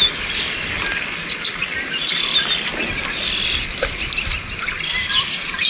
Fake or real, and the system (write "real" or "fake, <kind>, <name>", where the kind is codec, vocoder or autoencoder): real